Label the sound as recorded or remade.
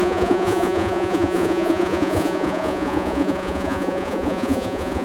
remade